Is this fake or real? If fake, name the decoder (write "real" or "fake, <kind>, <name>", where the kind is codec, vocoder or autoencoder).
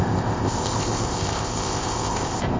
fake, codec, ZipCodec